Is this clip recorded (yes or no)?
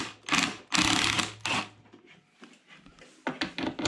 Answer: yes